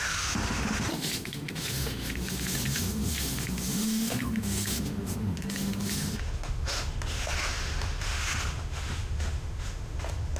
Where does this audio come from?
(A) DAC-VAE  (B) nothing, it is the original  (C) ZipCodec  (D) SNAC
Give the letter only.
A